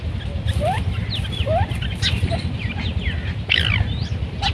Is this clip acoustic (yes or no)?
yes